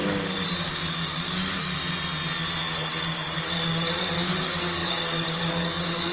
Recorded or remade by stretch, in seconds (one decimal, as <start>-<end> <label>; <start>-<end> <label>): 0.0-1.0 recorded; 1.0-1.6 remade; 1.6-2.9 recorded; 2.9-6.1 remade